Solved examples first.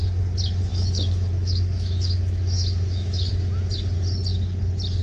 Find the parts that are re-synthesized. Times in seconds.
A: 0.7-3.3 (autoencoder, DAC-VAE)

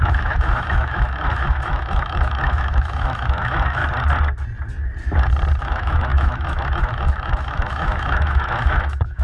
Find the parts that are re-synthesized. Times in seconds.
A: 0.0-3.8 (autoencoder, DAC-VAE); 5.6-9.2

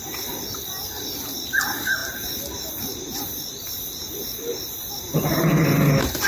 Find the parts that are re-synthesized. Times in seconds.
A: none